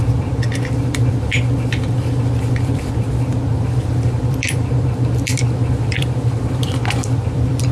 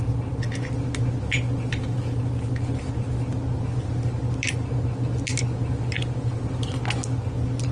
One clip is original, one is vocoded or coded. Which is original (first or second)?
second